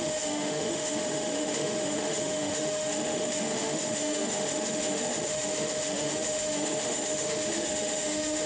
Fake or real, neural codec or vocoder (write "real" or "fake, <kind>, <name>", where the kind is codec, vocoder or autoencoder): fake, autoencoder, DAC-VAE